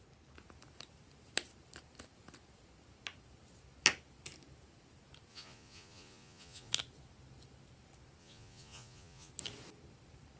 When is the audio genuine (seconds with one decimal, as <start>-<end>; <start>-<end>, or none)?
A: 0.0-5.3; 6.7-8.2; 9.3-10.4